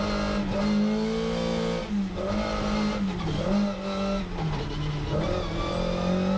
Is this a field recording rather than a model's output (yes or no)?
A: yes